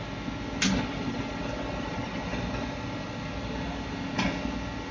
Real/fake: real